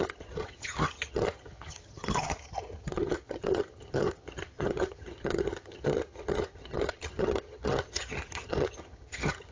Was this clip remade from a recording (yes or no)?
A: yes